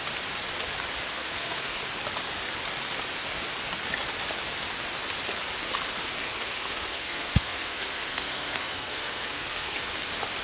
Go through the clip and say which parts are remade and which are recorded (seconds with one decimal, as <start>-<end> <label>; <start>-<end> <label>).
0.0-1.1 recorded; 1.1-1.8 remade; 1.8-6.2 recorded; 6.2-9.8 remade; 9.8-10.4 recorded